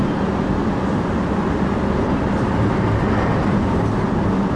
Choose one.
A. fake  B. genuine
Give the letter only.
B